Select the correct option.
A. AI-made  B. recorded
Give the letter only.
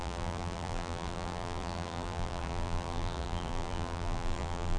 A